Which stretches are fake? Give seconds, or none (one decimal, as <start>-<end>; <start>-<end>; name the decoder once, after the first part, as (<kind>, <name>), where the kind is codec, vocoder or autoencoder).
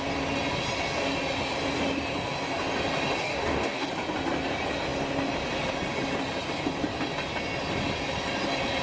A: 3.2-3.9 (codec, DAC)